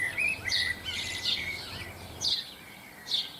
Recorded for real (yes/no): no